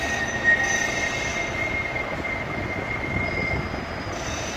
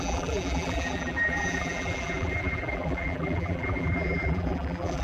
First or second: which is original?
first